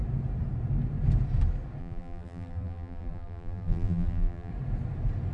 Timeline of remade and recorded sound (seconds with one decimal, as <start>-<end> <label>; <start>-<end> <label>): 0.0-1.8 recorded; 1.8-4.5 remade; 4.5-5.3 recorded